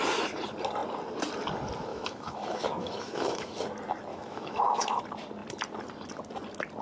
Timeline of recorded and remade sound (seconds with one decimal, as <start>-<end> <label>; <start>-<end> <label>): 0.0-1.9 recorded; 1.9-3.6 remade; 3.6-4.1 recorded; 4.1-5.0 remade; 5.0-6.8 recorded